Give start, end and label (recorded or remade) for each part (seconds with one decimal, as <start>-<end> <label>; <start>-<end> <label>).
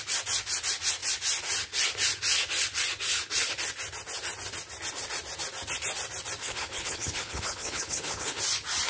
0.0-6.4 recorded; 6.4-8.4 remade; 8.4-8.9 recorded